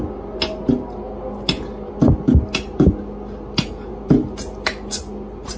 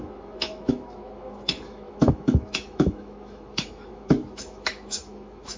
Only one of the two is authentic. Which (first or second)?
first